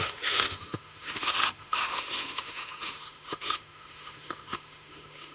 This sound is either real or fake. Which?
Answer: fake